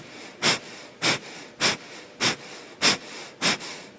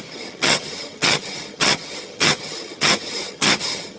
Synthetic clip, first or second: second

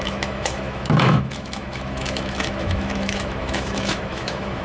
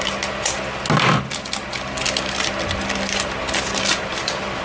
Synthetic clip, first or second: first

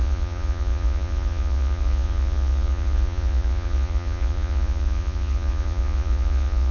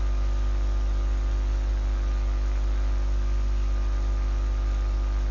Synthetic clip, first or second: first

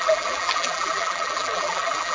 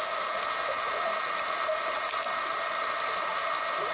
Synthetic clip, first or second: first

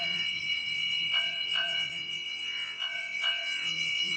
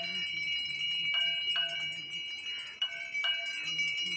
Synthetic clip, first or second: first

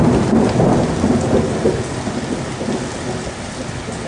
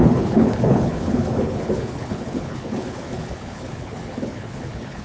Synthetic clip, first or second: second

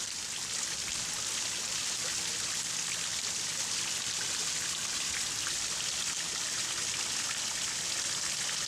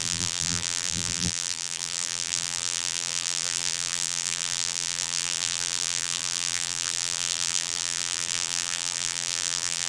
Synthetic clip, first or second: second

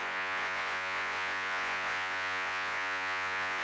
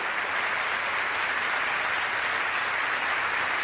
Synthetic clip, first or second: first